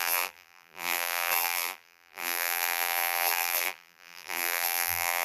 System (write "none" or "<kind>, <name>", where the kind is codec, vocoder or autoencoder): vocoder, BigVGAN v2